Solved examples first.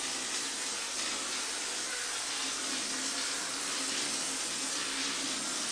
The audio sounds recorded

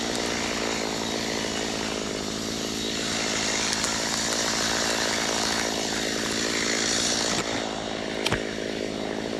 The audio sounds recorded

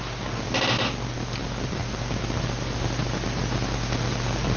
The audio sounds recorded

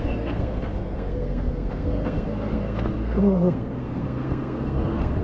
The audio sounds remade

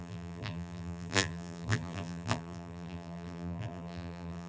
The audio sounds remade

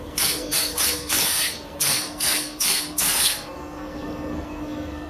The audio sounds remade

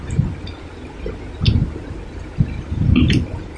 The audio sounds recorded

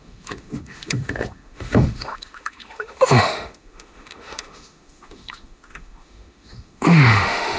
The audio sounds remade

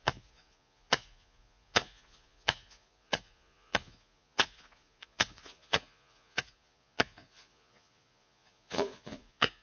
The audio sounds remade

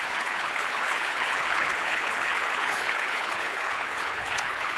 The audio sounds remade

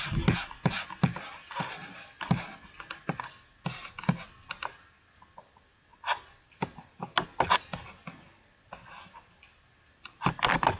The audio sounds recorded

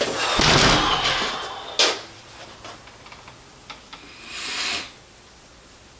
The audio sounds recorded